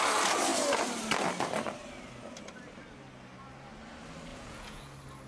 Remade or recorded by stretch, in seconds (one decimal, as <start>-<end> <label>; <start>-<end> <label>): 0.0-4.3 recorded; 4.3-4.8 remade; 4.8-5.3 recorded